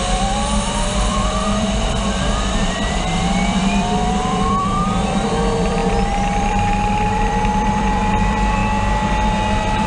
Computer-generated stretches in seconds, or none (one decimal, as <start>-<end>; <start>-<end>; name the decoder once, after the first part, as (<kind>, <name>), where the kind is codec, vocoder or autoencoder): 0.0-8.6 (vocoder, BigVGAN v2); 9.5-9.9